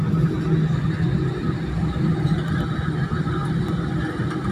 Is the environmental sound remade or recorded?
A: recorded